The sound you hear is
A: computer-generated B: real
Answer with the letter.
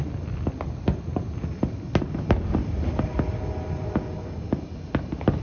B